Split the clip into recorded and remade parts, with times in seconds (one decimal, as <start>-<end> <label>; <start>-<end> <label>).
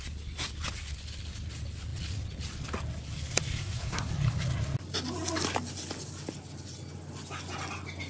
0.0-3.5 recorded; 3.5-4.1 remade; 4.1-8.1 recorded